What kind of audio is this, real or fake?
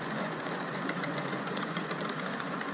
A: fake